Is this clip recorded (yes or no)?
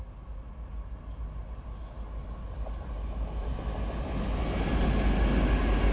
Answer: yes